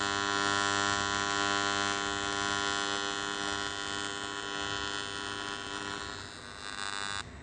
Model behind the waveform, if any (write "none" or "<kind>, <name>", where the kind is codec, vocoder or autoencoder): none